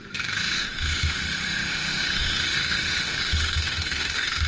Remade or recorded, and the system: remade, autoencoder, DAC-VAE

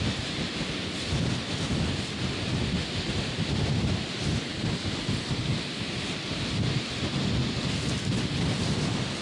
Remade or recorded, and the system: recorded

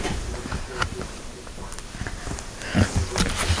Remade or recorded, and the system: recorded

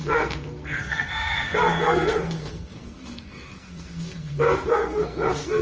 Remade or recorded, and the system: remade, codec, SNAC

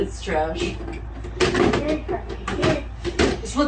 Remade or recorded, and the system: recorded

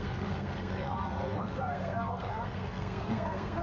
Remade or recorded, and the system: remade, codec, SNAC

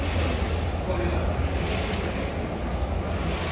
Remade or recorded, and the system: recorded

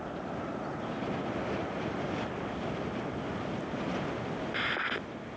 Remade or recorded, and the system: recorded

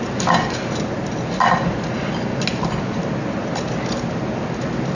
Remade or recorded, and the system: recorded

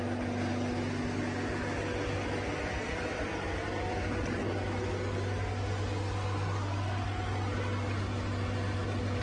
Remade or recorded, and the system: recorded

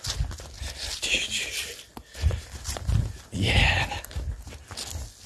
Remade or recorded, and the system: recorded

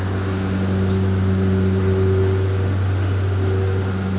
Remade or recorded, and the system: recorded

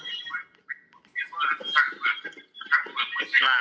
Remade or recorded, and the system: recorded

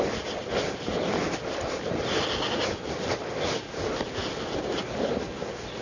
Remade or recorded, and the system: recorded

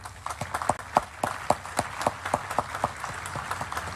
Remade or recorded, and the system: recorded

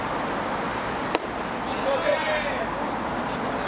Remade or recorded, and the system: recorded